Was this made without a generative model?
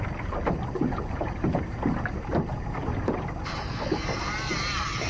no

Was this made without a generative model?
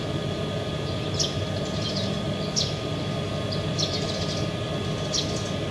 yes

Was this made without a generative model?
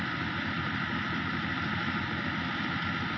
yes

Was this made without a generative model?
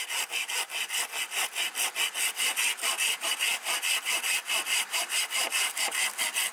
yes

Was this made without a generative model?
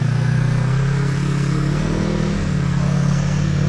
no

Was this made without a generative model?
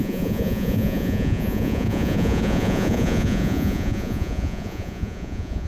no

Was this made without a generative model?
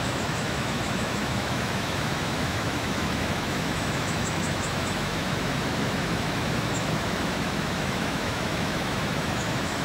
no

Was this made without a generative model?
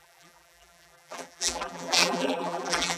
no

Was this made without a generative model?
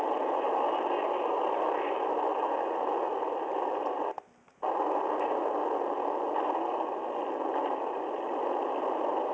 yes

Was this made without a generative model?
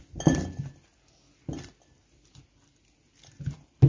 yes